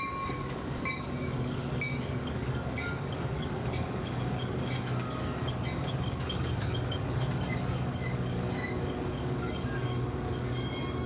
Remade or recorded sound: remade